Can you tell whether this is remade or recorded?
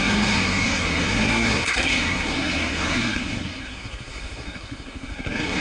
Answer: remade